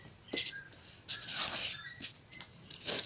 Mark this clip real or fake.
real